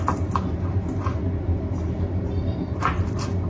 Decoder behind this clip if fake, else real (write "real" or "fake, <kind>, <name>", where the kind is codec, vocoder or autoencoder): real